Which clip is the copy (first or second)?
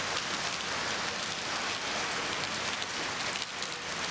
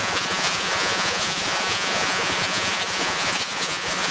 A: second